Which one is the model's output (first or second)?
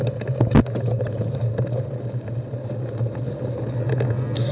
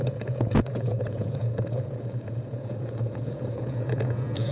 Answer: second